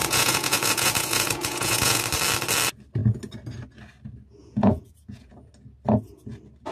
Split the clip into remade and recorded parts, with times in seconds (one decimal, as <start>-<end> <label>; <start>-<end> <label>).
0.0-2.0 remade; 2.0-4.4 recorded; 4.4-5.5 remade; 5.5-6.7 recorded

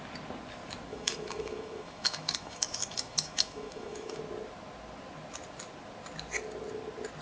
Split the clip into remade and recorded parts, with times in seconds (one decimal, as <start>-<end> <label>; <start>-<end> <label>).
0.0-0.9 recorded; 0.9-4.2 remade; 4.2-7.2 recorded